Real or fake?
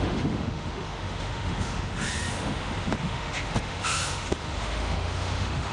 fake